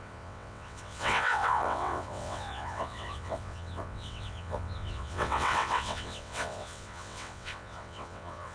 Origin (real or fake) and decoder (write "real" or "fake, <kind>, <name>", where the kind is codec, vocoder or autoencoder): fake, vocoder, WaveNeXt